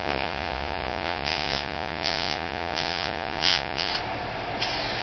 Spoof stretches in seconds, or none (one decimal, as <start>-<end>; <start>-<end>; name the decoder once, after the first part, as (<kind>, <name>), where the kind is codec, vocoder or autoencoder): 0.0-3.9 (vocoder, Vocos)